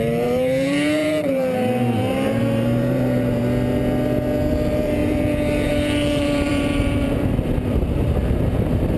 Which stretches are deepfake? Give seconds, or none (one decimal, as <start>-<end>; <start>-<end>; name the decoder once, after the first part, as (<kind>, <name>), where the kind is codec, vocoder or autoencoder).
0.0-3.4 (vocoder, BigVGAN v2); 4.5-9.0